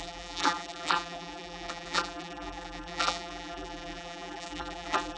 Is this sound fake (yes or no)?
yes